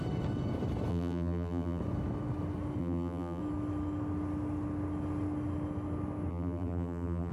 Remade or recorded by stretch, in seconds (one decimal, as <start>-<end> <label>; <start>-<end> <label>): 0.0-0.9 recorded; 0.9-1.8 remade; 1.8-2.8 recorded; 2.8-3.4 remade; 3.4-6.3 recorded; 6.3-7.3 remade

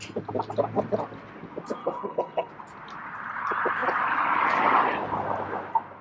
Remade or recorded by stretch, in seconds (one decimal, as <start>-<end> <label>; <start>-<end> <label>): 0.0-1.8 recorded; 1.8-2.5 remade; 2.5-6.0 recorded

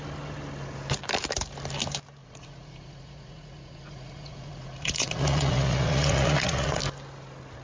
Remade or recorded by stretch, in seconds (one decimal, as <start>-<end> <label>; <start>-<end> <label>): 0.0-2.2 recorded; 2.2-6.8 remade; 6.8-7.6 recorded

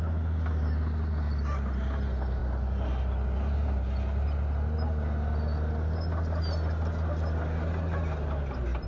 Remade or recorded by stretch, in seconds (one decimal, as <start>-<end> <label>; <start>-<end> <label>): 0.0-8.9 recorded

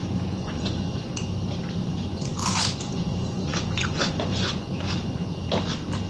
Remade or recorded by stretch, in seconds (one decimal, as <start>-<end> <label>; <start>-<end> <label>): 0.0-1.1 remade; 1.1-1.8 recorded; 1.8-5.5 remade; 5.5-6.1 recorded

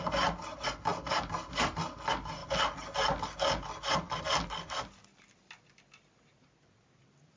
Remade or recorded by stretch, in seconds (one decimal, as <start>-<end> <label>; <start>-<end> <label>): 0.0-7.4 recorded

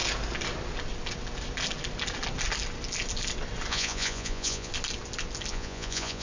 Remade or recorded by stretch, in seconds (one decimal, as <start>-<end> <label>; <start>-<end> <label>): 0.0-3.7 recorded; 3.7-4.7 remade; 4.7-5.5 recorded; 5.5-6.2 remade